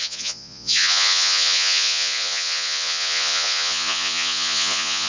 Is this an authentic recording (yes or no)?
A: no